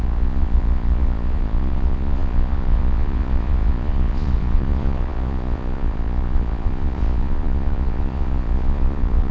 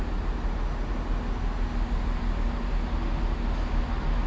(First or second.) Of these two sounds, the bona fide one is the second